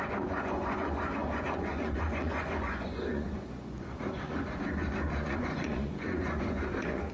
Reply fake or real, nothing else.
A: fake